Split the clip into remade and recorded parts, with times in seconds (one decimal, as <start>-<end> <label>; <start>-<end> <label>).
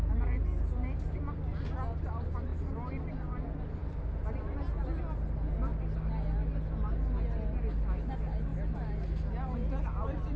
0.0-10.4 recorded